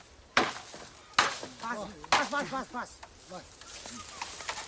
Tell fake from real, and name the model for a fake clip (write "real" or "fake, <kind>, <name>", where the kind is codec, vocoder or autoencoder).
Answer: real